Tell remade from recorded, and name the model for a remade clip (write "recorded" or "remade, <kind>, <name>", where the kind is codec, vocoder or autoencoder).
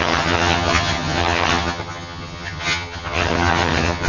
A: remade, vocoder, HiFi-GAN